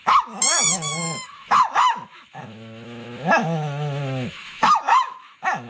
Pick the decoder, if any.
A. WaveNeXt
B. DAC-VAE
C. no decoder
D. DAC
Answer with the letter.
B